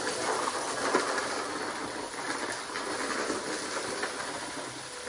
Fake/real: real